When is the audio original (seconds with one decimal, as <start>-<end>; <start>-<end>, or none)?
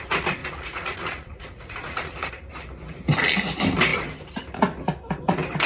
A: 0.0-0.4; 2.3-5.7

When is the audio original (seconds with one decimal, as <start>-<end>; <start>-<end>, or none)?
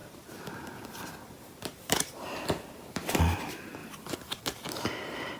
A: 3.2-3.8; 4.4-5.4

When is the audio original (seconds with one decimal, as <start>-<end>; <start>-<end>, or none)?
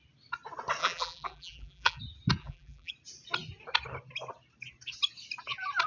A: 0.0-0.8; 2.0-2.4; 2.9-5.9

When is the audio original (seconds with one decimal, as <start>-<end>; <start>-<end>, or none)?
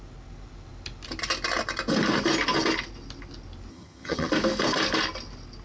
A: 0.0-3.7; 4.3-5.6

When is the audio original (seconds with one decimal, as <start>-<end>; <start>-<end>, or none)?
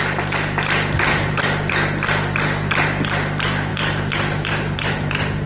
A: 0.0-1.1; 1.7-3.7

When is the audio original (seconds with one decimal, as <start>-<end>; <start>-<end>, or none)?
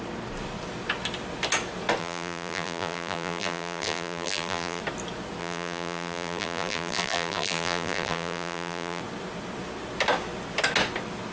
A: 0.0-2.0; 4.8-5.4; 9.0-11.3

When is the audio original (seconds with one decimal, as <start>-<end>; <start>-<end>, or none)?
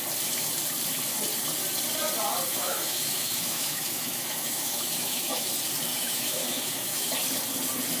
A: 0.0-2.5; 5.5-5.9; 7.1-8.0